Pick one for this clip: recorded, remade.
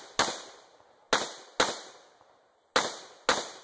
recorded